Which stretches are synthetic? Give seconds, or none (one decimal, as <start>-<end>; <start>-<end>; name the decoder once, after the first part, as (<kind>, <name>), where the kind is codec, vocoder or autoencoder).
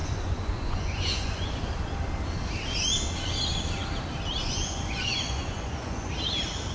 0.0-1.6 (vocoder, Vocos); 4.4-6.1